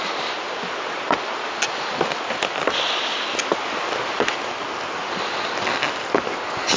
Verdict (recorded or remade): recorded